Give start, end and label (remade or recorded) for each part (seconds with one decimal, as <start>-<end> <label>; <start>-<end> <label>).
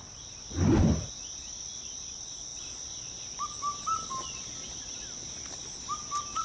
0.0-6.4 recorded